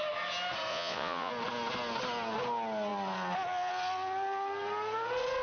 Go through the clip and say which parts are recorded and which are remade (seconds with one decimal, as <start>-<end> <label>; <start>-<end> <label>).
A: 0.0-0.7 recorded; 0.7-1.3 remade; 1.3-5.4 recorded